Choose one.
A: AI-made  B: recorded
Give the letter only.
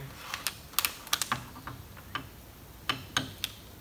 B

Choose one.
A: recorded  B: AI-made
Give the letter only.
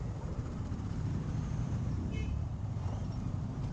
B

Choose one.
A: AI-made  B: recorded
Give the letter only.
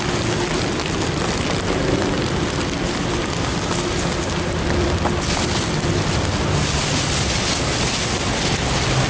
B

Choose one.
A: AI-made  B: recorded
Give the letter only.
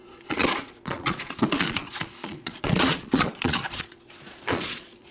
A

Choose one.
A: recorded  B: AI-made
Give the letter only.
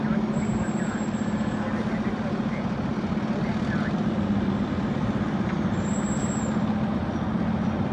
A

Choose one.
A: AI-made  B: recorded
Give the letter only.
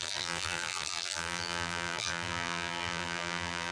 A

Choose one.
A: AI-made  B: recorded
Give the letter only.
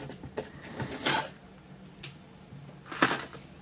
B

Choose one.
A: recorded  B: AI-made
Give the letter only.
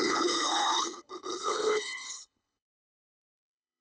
B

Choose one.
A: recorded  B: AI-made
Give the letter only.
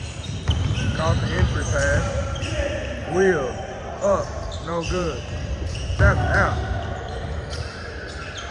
B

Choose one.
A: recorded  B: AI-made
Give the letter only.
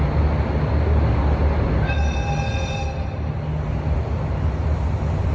A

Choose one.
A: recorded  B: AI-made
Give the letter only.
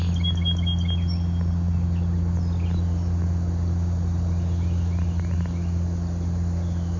A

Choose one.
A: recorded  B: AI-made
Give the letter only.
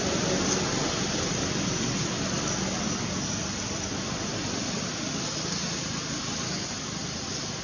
A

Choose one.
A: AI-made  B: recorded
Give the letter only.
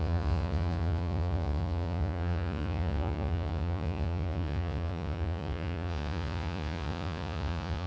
A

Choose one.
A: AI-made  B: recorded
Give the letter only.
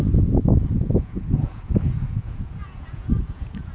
A